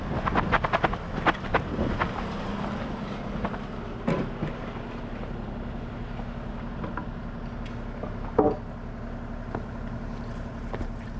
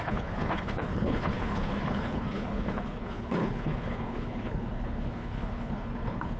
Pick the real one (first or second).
first